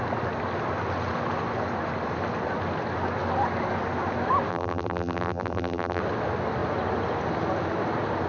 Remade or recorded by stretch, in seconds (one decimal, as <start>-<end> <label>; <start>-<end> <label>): 0.0-4.5 recorded; 4.5-6.0 remade; 6.0-8.3 recorded